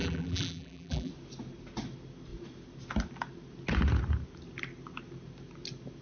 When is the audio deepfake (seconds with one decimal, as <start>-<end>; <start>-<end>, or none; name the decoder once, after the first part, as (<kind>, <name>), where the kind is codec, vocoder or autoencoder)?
0.0-1.1 (vocoder, BigVGAN v2)